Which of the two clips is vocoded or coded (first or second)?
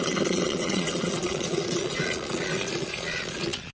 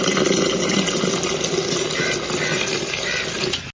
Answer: first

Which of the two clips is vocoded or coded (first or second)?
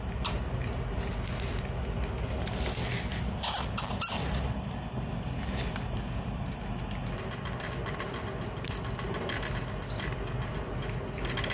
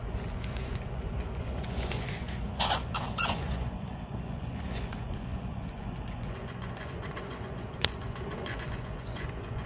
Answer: second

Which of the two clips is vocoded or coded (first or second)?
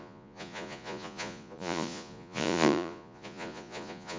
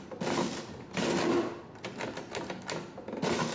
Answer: first